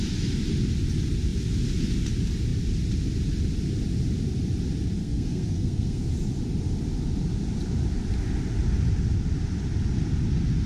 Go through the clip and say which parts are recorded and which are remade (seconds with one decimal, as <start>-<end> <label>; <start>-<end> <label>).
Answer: 0.0-5.0 recorded; 5.0-6.1 remade; 6.1-10.7 recorded

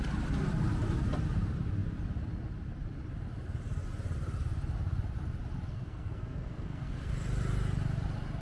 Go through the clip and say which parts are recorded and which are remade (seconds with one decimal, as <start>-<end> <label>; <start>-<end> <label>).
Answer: 0.0-5.7 recorded; 5.7-7.1 remade; 7.1-8.4 recorded

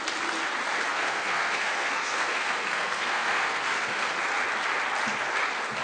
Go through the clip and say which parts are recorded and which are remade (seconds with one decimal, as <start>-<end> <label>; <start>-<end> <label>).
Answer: 0.0-0.9 recorded; 0.9-4.1 remade; 4.1-5.8 recorded